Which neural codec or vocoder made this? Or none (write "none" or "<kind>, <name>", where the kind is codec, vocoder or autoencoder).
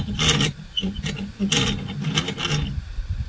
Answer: none